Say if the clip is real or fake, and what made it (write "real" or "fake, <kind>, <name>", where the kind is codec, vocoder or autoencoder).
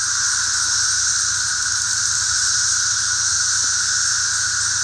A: real